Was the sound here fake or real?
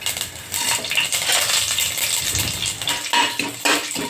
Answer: real